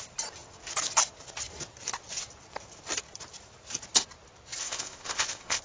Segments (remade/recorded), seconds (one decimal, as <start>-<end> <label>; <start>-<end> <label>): 0.0-4.6 recorded; 4.6-5.6 remade